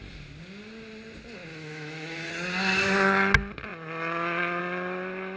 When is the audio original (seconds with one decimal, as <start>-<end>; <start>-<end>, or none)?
0.0-1.5; 2.3-5.4